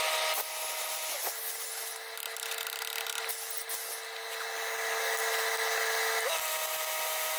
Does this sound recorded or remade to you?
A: recorded